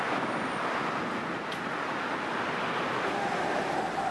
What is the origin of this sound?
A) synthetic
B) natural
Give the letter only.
B